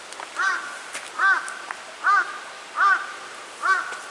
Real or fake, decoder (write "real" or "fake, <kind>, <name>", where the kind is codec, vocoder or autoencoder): real